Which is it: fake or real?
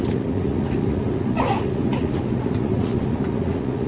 fake